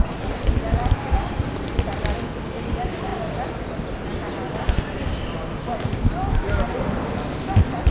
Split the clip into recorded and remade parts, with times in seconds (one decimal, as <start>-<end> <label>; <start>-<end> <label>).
0.0-0.5 remade; 0.5-7.9 recorded